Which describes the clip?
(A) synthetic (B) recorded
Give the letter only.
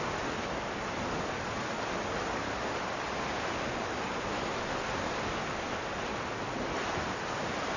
B